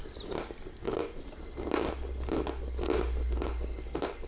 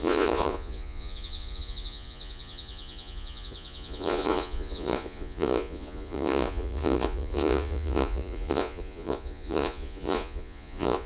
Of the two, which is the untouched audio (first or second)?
first